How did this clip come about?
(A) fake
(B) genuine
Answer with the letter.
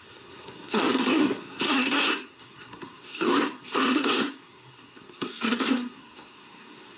A